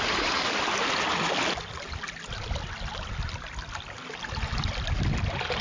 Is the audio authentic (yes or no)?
yes